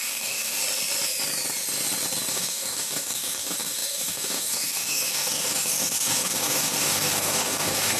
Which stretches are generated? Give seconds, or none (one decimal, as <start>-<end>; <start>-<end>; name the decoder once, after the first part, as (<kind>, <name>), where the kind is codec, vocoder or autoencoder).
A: 0.0-0.6 (codec, DAC); 2.3-8.0